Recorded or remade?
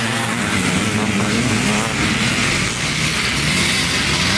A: recorded